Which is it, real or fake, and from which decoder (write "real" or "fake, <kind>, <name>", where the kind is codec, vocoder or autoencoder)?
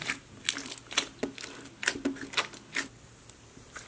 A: real